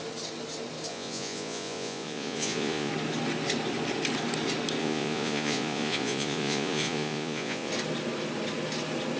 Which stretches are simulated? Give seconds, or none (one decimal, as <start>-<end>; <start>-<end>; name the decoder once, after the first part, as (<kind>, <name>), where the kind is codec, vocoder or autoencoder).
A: 0.9-2.9 (vocoder, Vocos); 4.8-7.7